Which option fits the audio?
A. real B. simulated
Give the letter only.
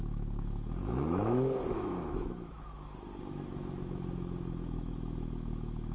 B